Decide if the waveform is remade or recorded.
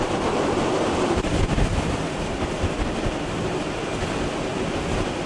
recorded